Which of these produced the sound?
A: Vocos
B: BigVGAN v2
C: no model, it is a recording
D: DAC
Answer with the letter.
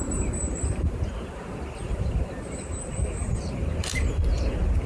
B